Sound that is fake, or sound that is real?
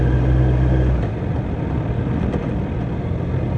real